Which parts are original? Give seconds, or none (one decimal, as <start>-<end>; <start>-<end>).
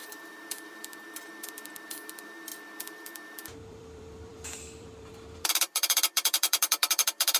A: none